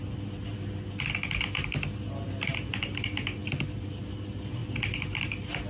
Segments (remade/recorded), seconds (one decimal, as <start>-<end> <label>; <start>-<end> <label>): 0.0-5.7 recorded